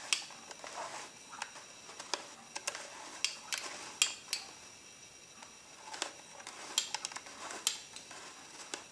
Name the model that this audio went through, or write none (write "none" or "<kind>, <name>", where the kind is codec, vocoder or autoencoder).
none